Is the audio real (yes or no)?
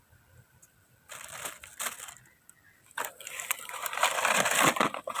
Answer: yes